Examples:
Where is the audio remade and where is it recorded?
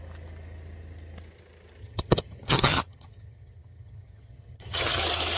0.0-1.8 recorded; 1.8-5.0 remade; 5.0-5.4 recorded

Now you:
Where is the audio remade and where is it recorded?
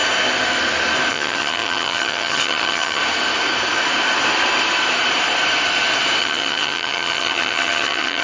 0.0-1.1 recorded; 1.1-3.0 remade; 3.0-6.2 recorded; 6.2-8.2 remade